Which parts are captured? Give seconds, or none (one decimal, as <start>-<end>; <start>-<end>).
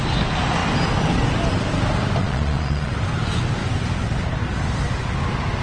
0.0-2.2; 2.9-5.6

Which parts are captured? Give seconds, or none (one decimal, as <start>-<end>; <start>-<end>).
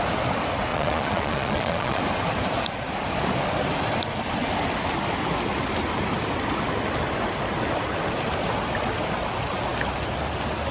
0.0-0.7; 2.0-10.7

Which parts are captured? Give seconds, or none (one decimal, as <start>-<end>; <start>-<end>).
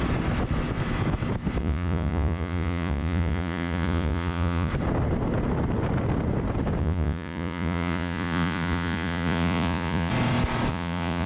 0.0-1.6; 4.7-6.8; 10.1-10.7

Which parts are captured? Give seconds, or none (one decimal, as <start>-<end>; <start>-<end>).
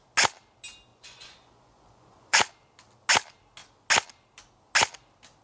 0.0-0.9; 2.5-5.4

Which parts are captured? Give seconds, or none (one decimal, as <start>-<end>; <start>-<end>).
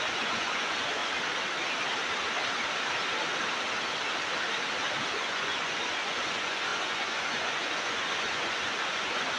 1.0-5.1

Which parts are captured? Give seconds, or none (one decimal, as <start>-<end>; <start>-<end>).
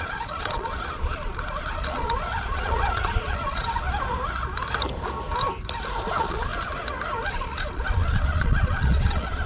3.7-6.1; 6.5-7.3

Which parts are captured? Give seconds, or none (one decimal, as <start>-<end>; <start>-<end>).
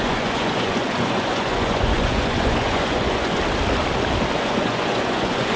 3.4-4.4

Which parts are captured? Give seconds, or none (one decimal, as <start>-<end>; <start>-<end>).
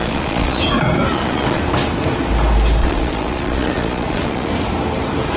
0.6-1.1; 1.6-2.8; 4.5-5.4